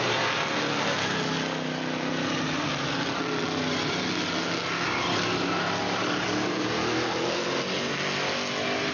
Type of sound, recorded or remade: recorded